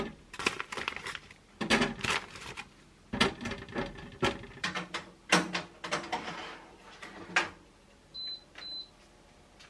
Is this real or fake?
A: real